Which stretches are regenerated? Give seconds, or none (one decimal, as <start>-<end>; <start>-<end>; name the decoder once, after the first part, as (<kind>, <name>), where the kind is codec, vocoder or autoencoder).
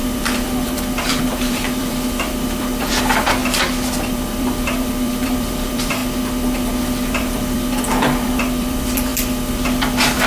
0.0-3.4 (vocoder, BigVGAN v2); 4.1-6.0; 6.8-10.3